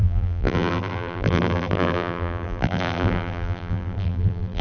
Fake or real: fake